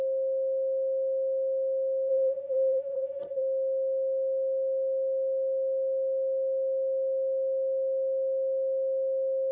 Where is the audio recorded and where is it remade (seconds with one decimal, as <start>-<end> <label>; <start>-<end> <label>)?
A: 0.0-2.1 recorded; 2.1-3.4 remade; 3.4-9.5 recorded